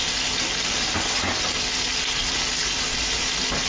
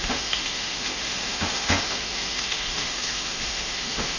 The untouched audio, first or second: first